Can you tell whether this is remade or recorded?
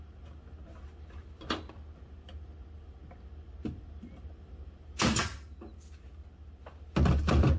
recorded